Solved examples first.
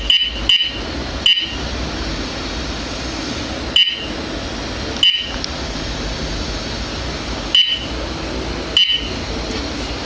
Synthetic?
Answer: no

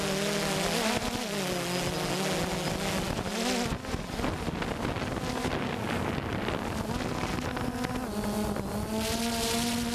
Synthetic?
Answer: no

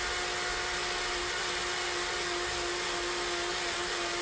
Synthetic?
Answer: no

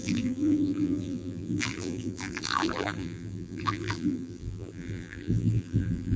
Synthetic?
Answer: yes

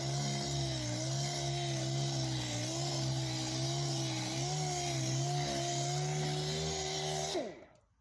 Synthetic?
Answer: no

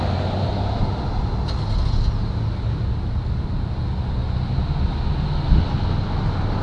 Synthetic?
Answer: no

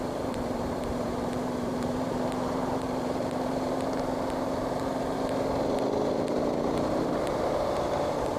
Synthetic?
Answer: yes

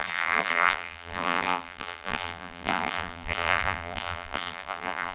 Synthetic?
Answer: yes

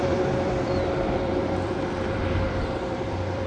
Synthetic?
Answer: yes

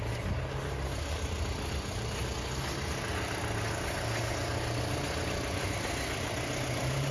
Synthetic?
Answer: no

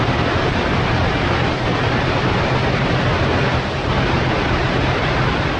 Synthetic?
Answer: yes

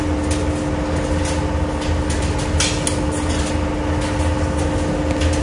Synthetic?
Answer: no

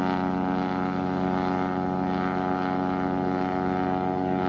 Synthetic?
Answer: no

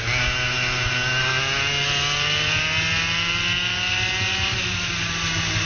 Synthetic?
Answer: no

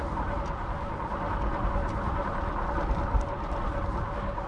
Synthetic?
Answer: no